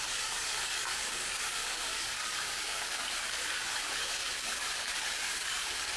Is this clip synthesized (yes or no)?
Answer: yes